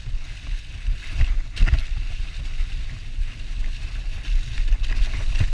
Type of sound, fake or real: real